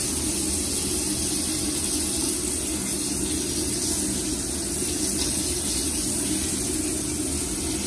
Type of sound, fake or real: real